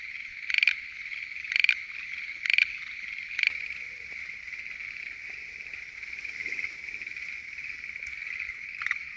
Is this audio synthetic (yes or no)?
no